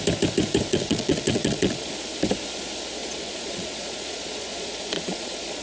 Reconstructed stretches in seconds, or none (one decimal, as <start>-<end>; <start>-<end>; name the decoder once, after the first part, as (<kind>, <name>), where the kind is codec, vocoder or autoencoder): 0.7-1.9 (vocoder, Vocos); 3.0-5.6